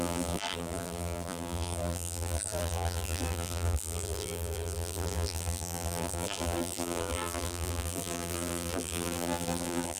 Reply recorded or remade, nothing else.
remade